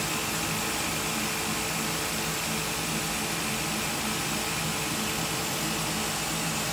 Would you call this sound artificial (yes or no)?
no